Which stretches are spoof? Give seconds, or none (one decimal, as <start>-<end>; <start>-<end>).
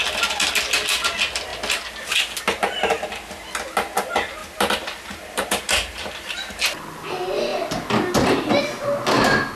0.0-0.5; 4.4-7.1; 7.5-8.6